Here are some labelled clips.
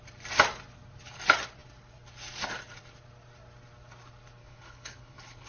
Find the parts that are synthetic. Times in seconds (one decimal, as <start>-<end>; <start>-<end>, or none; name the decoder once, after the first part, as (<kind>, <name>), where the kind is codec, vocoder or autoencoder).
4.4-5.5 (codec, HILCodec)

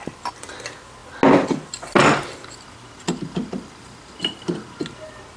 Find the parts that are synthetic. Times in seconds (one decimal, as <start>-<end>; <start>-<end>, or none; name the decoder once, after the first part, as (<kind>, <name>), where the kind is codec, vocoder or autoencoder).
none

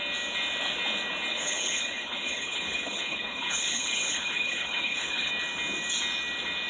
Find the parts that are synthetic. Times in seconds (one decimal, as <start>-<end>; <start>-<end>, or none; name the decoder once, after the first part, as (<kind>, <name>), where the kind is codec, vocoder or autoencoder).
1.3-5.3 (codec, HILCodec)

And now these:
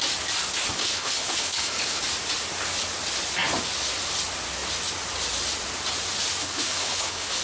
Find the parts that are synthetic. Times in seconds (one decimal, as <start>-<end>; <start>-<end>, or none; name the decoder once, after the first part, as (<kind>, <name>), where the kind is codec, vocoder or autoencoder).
0.8-2.0 (codec, HILCodec); 6.4-7.4

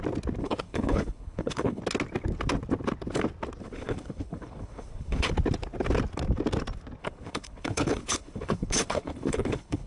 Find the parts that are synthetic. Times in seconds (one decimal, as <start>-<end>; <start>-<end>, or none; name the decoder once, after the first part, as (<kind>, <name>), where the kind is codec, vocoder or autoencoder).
0.4-1.8 (codec, HILCodec); 3.6-5.3; 7.0-9.9